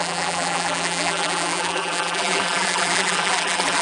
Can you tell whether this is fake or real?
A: fake